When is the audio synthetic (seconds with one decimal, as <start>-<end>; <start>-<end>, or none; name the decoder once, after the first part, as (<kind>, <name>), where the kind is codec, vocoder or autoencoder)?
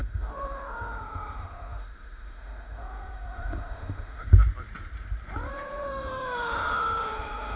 0.0-4.3 (autoencoder, DAC-VAE); 5.5-7.6